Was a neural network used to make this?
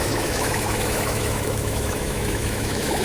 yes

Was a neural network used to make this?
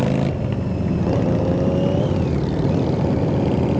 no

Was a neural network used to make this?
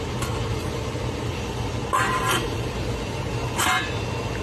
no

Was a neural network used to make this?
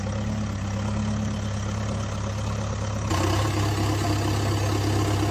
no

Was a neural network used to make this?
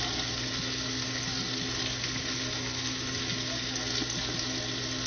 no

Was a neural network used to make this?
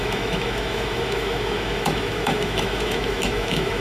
yes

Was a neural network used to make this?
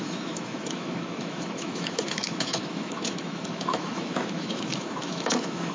yes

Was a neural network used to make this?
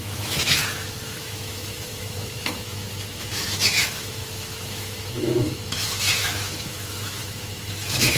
yes